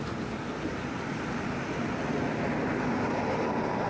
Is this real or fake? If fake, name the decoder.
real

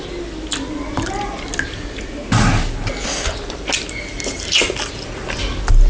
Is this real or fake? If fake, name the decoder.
real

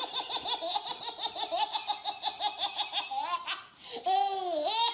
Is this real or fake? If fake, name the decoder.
real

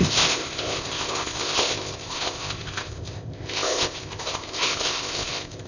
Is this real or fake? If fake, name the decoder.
fake, codec, ZipCodec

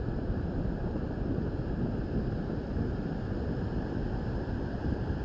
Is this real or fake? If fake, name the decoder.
real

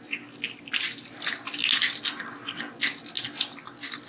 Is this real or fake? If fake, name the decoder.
real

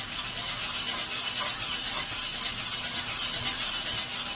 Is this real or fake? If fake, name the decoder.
real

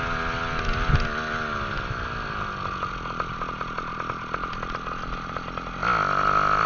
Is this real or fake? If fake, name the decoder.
real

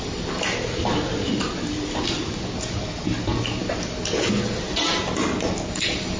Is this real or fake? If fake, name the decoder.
real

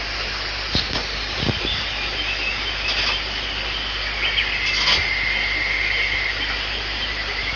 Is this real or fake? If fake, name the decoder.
real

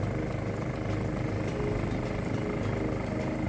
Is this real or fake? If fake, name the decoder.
real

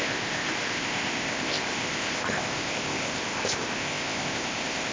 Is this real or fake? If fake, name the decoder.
fake, codec, ZipCodec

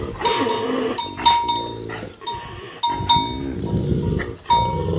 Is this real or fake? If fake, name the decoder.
real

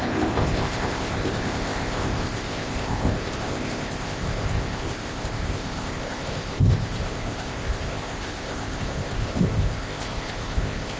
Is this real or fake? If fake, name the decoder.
fake, codec, ZipCodec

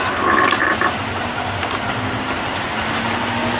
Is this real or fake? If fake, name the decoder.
real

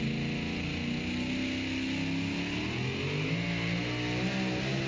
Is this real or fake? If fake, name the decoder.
real